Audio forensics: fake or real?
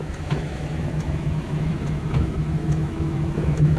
fake